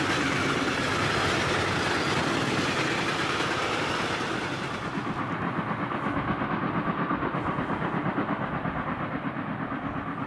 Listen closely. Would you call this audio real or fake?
real